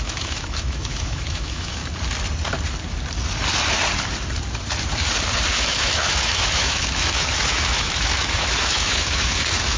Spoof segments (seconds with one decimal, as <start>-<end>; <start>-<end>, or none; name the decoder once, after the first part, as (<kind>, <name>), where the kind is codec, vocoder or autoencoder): 0.0-1.8 (autoencoder, DAC-VAE); 5.5-9.8